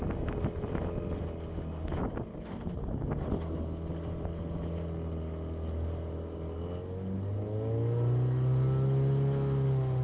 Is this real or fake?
real